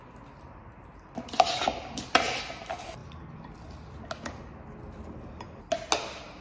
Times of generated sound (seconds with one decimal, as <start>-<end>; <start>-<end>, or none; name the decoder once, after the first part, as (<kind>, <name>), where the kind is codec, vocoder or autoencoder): none